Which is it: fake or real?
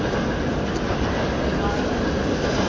real